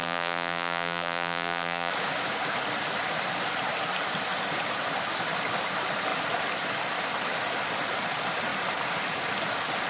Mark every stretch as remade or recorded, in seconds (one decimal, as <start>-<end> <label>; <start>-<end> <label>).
0.0-1.9 remade; 1.9-9.9 recorded